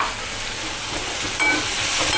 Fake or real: real